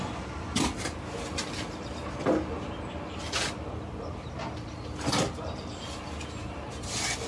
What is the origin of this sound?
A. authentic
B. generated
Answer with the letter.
A